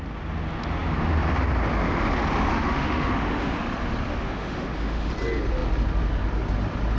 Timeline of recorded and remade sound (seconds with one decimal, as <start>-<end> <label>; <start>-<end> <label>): 0.0-2.5 recorded; 2.5-3.6 remade; 3.6-4.1 recorded; 4.1-5.1 remade; 5.1-7.0 recorded